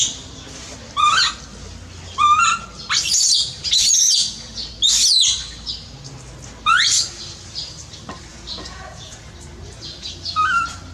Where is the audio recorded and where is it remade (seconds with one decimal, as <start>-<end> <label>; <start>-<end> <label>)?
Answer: 0.0-8.3 recorded; 8.3-9.3 remade; 9.3-10.9 recorded